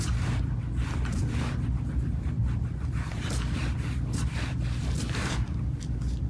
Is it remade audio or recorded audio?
remade